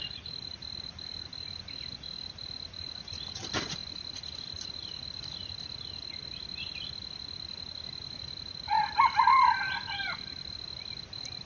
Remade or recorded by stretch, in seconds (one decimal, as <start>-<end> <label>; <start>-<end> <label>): 0.0-11.5 recorded